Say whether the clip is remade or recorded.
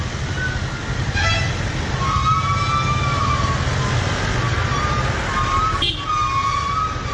recorded